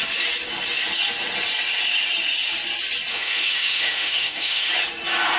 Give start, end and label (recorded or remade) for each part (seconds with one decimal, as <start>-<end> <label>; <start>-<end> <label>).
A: 0.0-3.1 recorded; 3.1-4.7 remade; 4.7-5.4 recorded